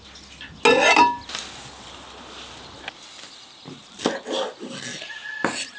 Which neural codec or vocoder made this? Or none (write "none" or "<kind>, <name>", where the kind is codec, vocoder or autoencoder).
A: none